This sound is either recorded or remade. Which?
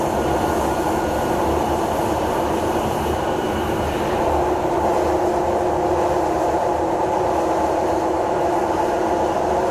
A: recorded